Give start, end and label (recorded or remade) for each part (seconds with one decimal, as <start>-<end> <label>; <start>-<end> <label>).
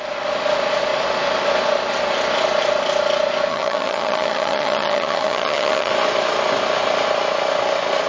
0.0-3.5 recorded; 3.5-5.9 remade; 5.9-8.1 recorded